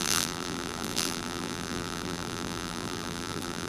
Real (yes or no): no